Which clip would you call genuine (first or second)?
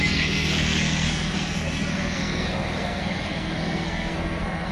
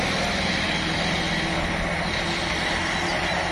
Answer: second